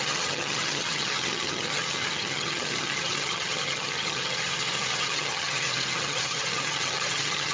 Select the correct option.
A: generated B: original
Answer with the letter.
A